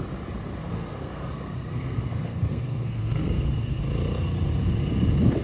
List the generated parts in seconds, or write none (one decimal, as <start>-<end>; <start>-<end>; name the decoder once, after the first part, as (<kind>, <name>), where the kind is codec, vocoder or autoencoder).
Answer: 0.6-3.8 (codec, SNAC)